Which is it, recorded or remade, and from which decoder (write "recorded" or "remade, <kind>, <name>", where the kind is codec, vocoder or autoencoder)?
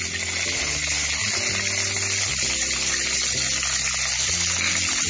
recorded